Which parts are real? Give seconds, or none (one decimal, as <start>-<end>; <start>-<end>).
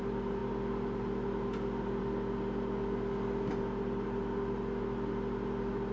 0.0-5.9